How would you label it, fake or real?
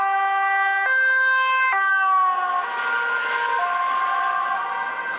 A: real